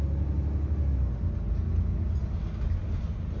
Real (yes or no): yes